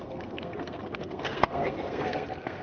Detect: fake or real fake